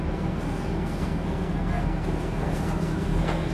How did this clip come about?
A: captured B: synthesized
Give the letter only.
B